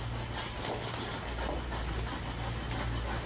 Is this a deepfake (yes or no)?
no